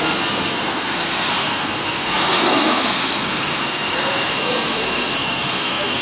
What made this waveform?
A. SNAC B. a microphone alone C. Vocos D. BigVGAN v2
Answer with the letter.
A